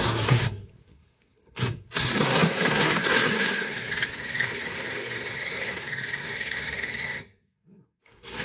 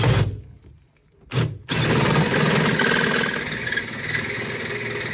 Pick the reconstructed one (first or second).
first